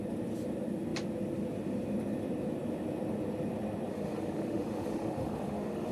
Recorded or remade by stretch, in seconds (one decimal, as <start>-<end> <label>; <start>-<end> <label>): 0.0-3.9 recorded; 3.9-5.9 remade